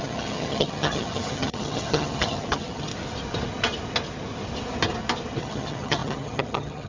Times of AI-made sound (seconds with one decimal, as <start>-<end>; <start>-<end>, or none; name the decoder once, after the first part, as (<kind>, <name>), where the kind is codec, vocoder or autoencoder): 0.0-2.9 (vocoder, HiFi-GAN); 5.4-6.9